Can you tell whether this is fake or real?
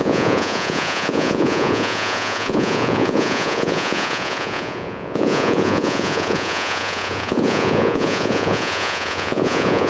fake